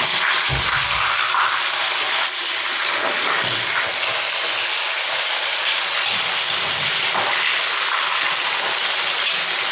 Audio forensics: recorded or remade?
recorded